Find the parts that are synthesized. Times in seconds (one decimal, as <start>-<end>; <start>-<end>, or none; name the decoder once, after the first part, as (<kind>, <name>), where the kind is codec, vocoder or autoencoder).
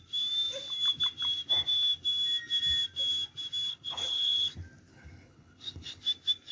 3.7-4.5 (codec, HILCodec); 4.9-6.0